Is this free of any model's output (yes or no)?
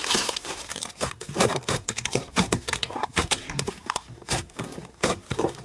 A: no